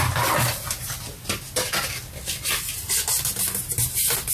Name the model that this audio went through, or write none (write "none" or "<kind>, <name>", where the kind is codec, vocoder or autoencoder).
none